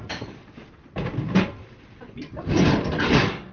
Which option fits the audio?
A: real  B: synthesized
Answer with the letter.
A